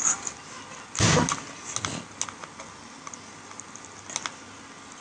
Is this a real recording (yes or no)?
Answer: yes